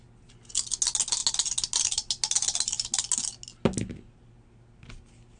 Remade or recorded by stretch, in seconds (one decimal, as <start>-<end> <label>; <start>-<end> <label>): 0.0-5.4 recorded